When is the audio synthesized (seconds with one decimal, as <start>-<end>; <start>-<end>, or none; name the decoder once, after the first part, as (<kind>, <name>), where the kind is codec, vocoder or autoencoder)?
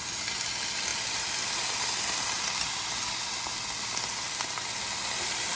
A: none